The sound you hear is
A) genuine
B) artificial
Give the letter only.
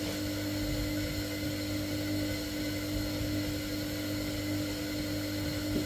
A